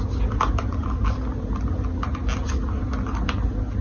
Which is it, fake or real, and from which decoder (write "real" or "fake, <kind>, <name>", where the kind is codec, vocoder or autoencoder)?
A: real